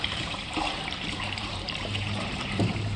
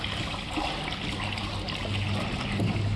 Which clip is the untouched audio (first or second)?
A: second